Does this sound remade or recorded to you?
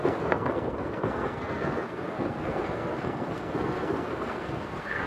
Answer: remade